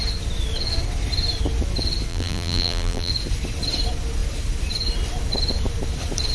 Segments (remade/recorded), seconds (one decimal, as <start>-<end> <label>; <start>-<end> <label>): 0.0-2.1 recorded; 2.1-3.1 remade; 3.1-6.3 recorded